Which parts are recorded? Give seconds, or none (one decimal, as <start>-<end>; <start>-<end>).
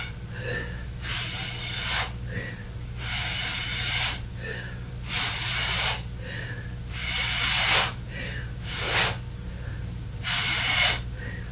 0.0-4.3; 4.9-11.5